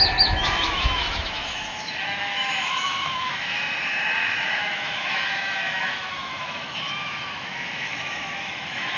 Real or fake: fake